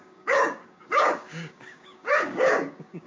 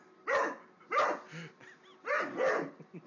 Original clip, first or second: second